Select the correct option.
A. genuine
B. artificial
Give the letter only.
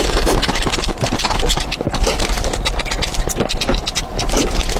A